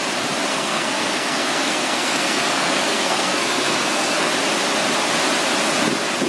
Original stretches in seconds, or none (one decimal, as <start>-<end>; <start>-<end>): 0.0-0.5; 4.3-6.3